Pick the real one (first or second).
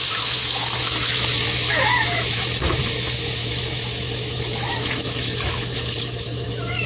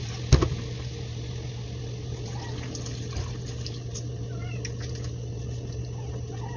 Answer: second